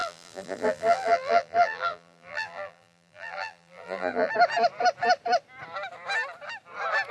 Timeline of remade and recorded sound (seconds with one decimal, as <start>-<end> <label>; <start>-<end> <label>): 0.0-4.3 remade; 4.3-7.1 recorded